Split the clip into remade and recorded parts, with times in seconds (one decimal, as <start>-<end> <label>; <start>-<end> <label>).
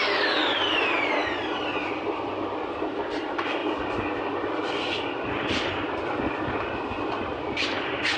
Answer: 0.0-8.2 recorded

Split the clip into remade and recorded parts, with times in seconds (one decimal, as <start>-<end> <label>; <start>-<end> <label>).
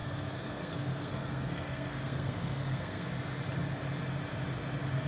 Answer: 0.0-3.1 remade; 3.1-5.1 recorded